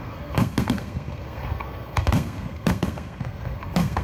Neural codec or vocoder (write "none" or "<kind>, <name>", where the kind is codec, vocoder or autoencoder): codec, SNAC